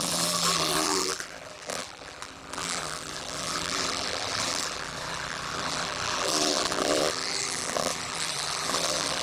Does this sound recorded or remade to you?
remade